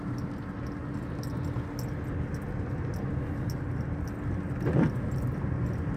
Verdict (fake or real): real